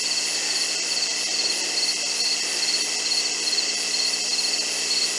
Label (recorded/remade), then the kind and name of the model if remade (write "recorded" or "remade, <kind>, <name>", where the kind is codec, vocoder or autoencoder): recorded